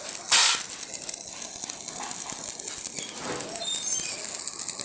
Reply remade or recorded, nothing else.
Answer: recorded